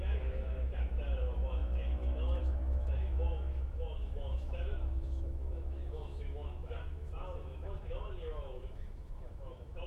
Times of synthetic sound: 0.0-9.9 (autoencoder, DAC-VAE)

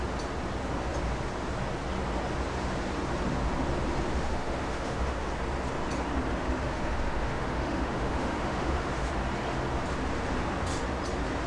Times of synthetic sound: 4.1-5.3 (autoencoder, DAC-VAE); 6.3-9.1

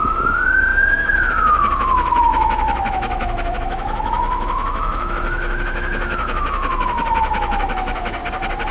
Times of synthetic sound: 0.0-8.2 (autoencoder, DAC-VAE)

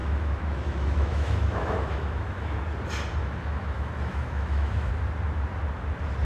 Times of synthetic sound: 0.0-2.6 (autoencoder, DAC-VAE); 3.2-4.9

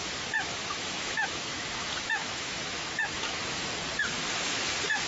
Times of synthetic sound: 0.6-3.7 (autoencoder, DAC-VAE)

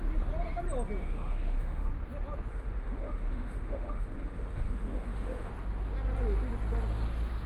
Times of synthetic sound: 1.0-1.9 (autoencoder, DAC-VAE); 2.5-5.5